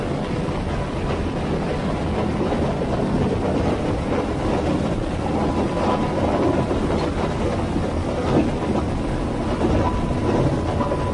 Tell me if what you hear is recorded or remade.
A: recorded